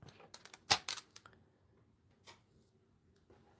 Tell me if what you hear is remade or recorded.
recorded